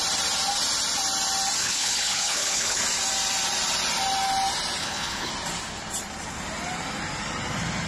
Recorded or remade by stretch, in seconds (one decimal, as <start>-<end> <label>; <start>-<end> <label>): 0.0-1.6 recorded; 1.6-2.8 remade; 2.8-4.8 recorded; 4.8-5.3 remade; 5.3-7.9 recorded